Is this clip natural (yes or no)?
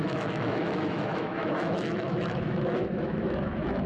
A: no